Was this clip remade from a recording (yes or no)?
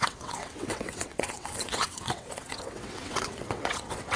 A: yes